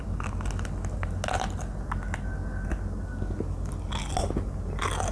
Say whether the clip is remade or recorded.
recorded